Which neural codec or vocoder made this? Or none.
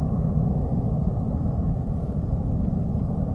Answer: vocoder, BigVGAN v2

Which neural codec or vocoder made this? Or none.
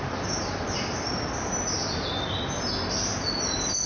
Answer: none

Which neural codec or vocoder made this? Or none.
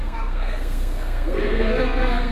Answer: codec, SNAC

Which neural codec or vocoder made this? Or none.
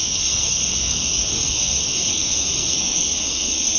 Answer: codec, SNAC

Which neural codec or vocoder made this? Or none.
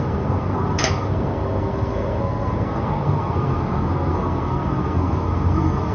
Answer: codec, SNAC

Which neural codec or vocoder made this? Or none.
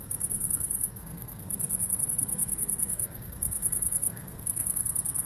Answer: codec, SNAC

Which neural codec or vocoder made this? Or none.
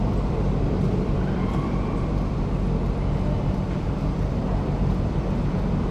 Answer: vocoder, BigVGAN v2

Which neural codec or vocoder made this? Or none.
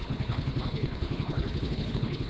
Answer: codec, HILCodec